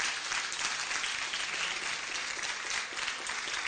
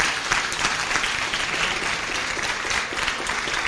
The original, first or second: first